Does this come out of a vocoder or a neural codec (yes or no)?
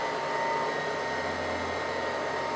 no